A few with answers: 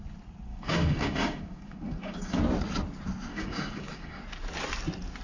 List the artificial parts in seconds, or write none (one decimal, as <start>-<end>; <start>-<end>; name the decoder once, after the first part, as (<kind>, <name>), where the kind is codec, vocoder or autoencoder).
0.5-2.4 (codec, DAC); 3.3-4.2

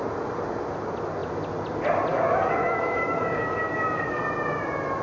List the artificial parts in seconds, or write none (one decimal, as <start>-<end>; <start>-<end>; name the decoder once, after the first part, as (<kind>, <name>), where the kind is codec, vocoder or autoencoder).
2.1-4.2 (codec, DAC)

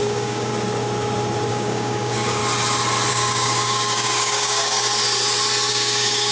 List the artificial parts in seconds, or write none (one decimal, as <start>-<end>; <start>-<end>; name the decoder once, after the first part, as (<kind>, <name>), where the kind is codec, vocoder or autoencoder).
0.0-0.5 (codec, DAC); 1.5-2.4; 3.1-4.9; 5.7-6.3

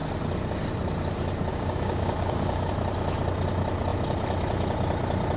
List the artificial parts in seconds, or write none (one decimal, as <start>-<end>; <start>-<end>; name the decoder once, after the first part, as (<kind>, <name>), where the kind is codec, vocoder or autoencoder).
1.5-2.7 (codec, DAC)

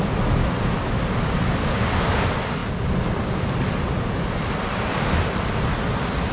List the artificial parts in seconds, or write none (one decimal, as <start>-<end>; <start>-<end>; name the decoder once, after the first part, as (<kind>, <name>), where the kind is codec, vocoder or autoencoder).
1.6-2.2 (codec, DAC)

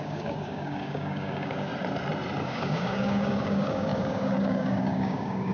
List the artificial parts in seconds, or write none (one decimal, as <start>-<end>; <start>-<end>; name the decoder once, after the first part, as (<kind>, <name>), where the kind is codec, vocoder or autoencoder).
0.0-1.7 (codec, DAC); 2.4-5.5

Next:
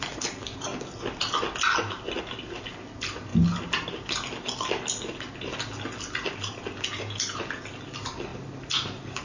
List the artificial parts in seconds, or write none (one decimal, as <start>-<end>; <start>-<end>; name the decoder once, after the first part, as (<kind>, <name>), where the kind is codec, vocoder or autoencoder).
none

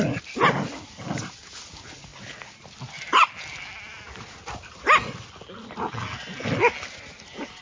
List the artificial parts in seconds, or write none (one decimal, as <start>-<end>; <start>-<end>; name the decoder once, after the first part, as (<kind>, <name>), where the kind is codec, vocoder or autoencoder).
none